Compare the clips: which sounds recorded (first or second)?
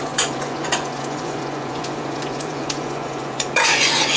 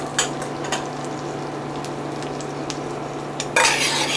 second